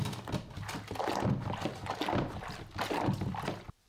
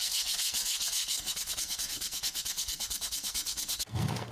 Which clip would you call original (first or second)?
first